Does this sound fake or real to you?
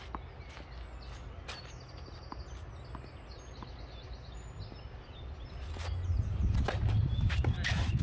real